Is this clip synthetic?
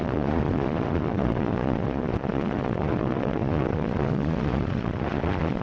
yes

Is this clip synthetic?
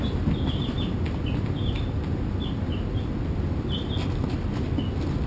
no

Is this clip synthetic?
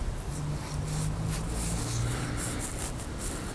no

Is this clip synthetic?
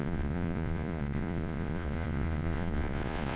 yes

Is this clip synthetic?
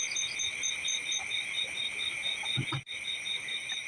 no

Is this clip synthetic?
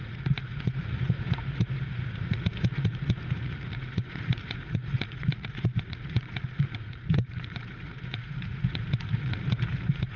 yes